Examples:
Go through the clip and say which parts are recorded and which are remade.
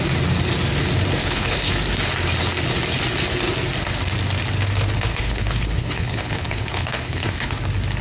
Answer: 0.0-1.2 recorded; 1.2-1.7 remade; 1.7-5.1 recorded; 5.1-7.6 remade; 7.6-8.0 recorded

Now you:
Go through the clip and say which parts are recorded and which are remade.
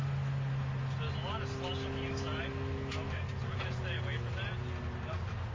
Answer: 0.0-5.5 recorded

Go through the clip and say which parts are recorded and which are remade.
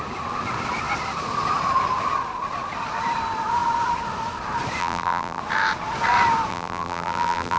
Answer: 0.0-4.8 recorded; 4.8-5.4 remade; 5.4-6.5 recorded; 6.5-7.6 remade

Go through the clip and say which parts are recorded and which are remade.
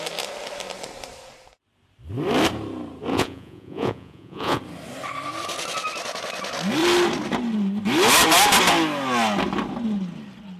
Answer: 0.0-3.1 recorded; 3.1-4.6 remade; 4.6-10.6 recorded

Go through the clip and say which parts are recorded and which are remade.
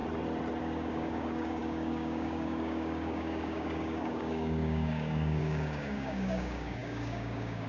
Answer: 0.0-0.6 recorded; 0.6-7.7 remade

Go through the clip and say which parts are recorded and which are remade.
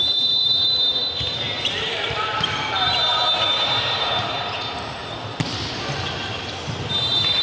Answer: 0.0-0.6 remade; 0.6-3.4 recorded; 3.4-5.0 remade; 5.0-5.9 recorded; 5.9-7.4 remade